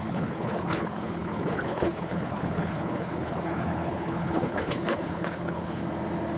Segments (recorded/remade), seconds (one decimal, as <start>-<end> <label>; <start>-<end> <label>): 0.0-5.8 remade; 5.8-6.4 recorded